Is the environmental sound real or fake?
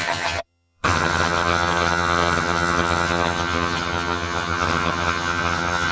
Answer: fake